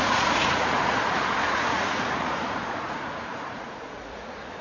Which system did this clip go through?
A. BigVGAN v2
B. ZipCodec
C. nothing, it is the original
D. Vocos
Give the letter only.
D